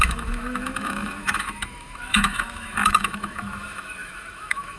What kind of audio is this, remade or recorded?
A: remade